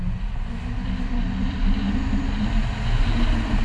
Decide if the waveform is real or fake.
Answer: real